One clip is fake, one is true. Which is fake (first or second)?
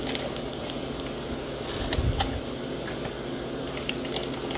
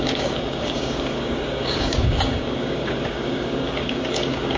second